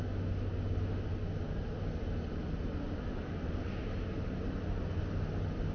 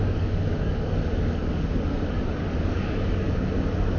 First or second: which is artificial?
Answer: second